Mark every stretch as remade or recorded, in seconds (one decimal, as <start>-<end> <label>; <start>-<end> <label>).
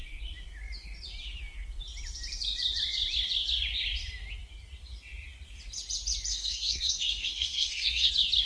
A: 0.0-6.3 recorded; 6.3-8.1 remade; 8.1-8.5 recorded